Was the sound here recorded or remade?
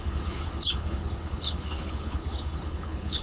remade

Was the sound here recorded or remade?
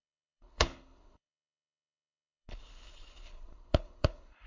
remade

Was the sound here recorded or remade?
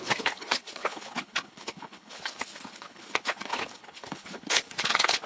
remade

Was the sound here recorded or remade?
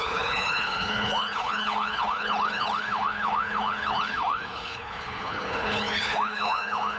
remade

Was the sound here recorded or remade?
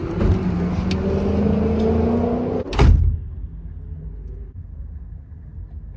recorded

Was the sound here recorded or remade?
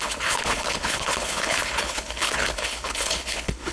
remade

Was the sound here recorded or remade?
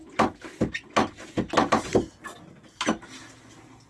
recorded